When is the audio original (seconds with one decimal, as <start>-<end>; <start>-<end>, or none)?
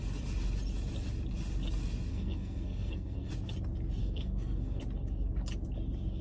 0.0-2.1; 3.3-4.0; 4.8-6.2